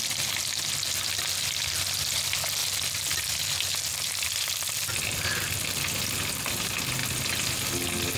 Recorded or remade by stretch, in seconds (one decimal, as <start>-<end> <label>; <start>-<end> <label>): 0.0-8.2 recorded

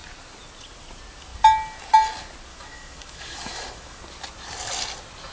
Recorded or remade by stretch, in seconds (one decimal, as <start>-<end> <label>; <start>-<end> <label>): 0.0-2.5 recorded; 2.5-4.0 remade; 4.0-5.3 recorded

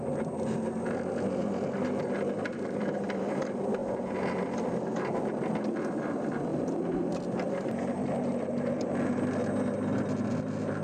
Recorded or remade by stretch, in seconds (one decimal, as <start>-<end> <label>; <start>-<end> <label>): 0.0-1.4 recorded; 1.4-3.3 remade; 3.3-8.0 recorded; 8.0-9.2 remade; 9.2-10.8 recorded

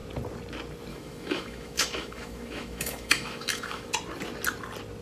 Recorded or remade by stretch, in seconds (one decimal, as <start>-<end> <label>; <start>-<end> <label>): 0.0-0.9 recorded; 0.9-3.9 remade; 3.9-5.0 recorded

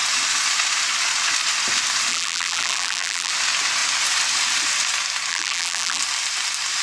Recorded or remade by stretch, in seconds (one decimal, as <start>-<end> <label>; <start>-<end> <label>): 0.0-2.1 recorded; 2.1-3.3 remade; 3.3-5.3 recorded; 5.3-6.0 remade; 6.0-6.8 recorded